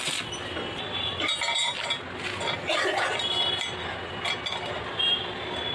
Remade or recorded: recorded